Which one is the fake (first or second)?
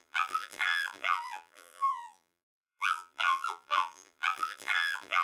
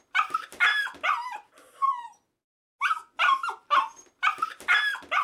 first